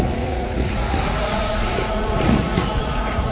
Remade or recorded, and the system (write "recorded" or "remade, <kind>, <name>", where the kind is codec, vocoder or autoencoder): remade, vocoder, Vocos